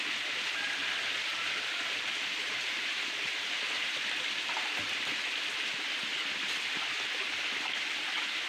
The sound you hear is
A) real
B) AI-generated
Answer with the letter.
A